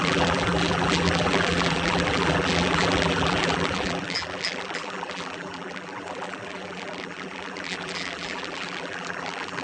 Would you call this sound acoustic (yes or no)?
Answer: no